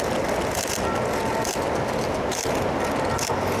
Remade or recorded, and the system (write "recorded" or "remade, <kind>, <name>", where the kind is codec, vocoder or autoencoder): recorded